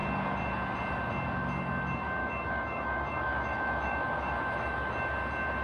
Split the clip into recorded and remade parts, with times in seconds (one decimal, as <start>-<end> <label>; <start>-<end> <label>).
0.0-2.2 recorded; 2.2-4.9 remade; 4.9-5.6 recorded